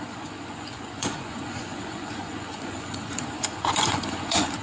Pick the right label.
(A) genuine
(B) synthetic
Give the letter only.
B